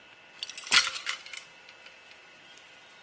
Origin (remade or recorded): recorded